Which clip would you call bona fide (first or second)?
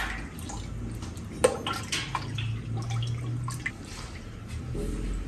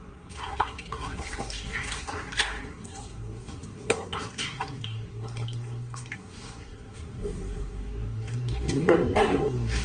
first